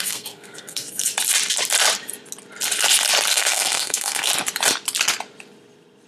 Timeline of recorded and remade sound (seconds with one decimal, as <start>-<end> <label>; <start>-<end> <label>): 0.0-1.1 remade; 1.1-3.3 recorded; 3.3-4.3 remade; 4.3-6.1 recorded